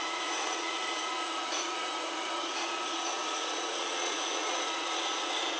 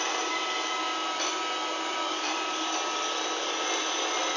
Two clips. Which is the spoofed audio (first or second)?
first